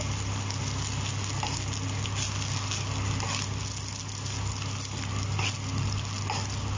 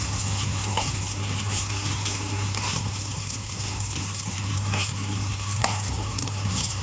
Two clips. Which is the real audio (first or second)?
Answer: first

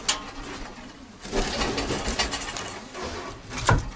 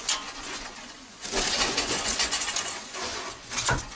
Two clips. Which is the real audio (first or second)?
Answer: first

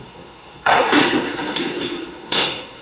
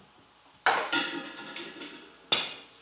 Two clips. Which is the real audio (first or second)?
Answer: second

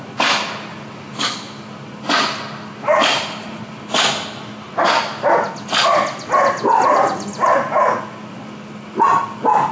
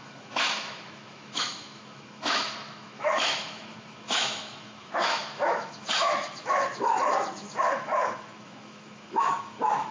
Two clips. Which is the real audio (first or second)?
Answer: first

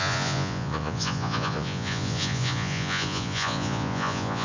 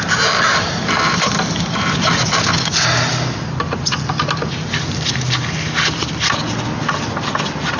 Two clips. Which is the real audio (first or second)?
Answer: second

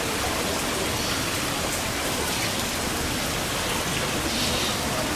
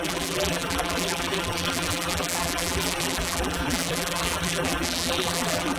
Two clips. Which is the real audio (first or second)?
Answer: first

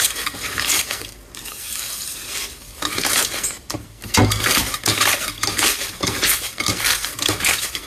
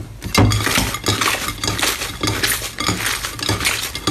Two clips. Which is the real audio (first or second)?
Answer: second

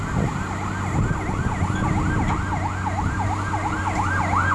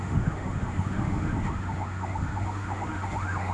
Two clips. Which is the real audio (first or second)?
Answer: first